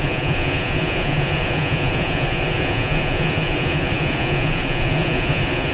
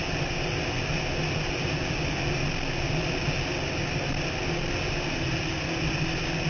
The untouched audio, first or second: second